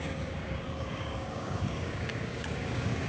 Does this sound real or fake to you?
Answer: fake